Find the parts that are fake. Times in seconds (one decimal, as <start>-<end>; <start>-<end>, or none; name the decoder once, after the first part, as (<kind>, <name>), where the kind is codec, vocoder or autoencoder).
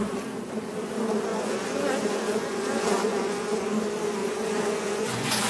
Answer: 1.3-3.8 (vocoder, Vocos); 4.2-5.5